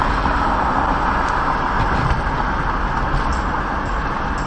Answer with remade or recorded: recorded